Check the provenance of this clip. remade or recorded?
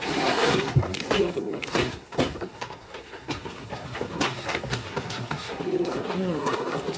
remade